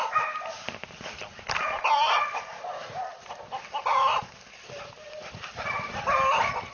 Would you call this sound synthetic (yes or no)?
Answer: no